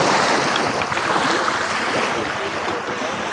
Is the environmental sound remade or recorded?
recorded